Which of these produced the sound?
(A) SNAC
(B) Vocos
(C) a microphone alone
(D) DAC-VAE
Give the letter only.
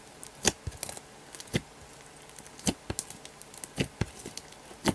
C